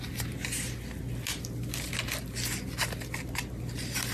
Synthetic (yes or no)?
no